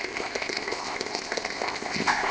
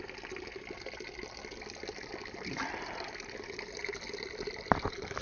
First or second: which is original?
second